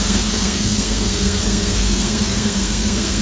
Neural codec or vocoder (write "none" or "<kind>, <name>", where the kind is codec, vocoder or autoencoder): codec, SNAC